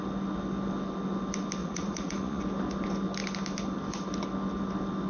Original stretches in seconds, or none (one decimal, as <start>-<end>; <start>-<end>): 0.0-1.6; 2.4-5.1